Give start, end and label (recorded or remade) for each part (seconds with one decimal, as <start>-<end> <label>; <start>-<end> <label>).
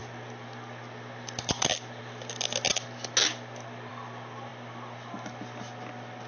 0.0-6.3 recorded